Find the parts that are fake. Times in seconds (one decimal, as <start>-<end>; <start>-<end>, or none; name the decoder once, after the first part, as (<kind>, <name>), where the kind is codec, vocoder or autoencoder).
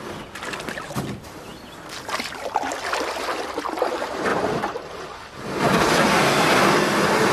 4.3-6.2 (vocoder, BigVGAN v2)